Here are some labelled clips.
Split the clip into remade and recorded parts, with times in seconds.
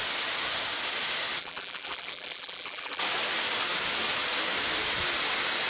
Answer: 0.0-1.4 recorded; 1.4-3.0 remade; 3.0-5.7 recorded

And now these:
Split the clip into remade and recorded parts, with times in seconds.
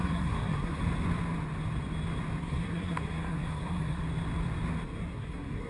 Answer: 0.0-0.8 remade; 0.8-2.4 recorded; 2.4-4.0 remade; 4.0-5.0 recorded; 5.0-5.7 remade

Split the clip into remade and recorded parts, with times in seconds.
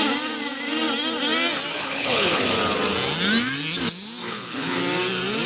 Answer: 0.0-1.7 recorded; 1.7-2.4 remade; 2.4-4.2 recorded; 4.2-4.8 remade; 4.8-5.5 recorded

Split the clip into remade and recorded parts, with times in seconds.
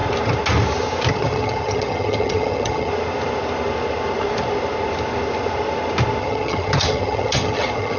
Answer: 0.0-1.1 recorded; 1.1-2.9 remade; 2.9-6.2 recorded; 6.2-8.0 remade